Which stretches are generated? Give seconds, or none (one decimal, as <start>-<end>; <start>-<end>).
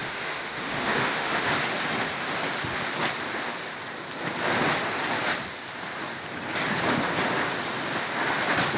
0.0-1.5